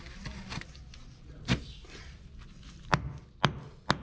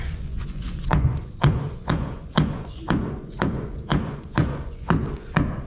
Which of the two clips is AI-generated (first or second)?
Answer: second